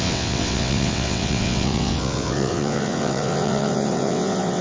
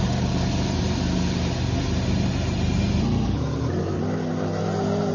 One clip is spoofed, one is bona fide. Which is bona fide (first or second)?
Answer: second